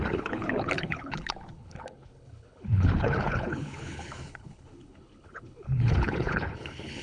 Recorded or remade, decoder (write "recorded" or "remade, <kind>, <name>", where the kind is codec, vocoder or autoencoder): remade, codec, HILCodec